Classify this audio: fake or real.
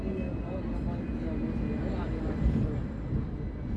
real